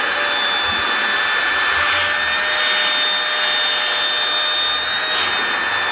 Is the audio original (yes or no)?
yes